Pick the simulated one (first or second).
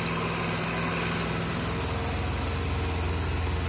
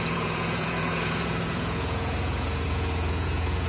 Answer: second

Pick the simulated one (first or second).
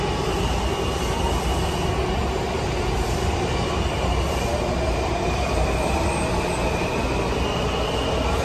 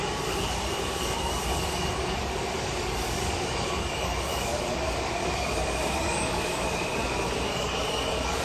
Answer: second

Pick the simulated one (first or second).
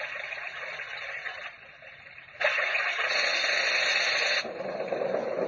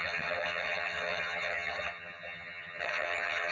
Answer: second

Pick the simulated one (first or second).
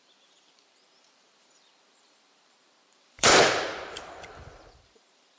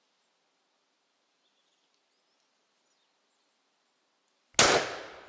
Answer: first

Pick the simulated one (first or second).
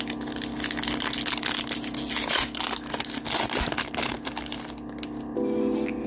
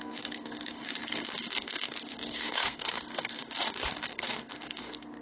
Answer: second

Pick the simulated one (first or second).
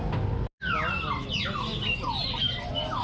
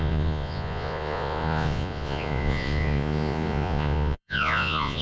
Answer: second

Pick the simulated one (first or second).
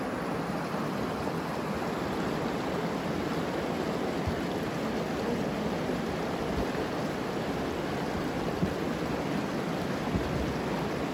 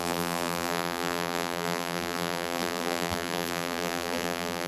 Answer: second